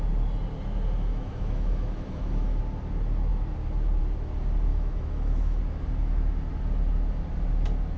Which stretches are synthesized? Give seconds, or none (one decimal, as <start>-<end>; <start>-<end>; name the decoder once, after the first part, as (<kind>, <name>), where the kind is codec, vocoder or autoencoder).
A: 1.1-2.6 (autoencoder, DAC-VAE); 4.7-5.6